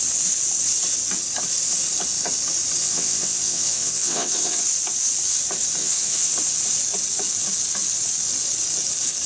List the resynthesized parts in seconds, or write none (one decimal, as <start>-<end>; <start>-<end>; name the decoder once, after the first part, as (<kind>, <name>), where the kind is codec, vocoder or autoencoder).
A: 2.8-4.6 (vocoder, WaveNeXt); 5.8-6.3